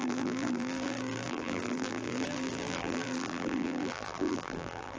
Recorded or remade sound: remade